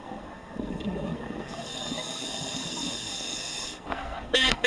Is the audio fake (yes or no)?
yes